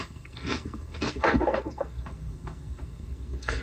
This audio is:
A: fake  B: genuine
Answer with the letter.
A